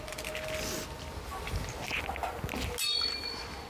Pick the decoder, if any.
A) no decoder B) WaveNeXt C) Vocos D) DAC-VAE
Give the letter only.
A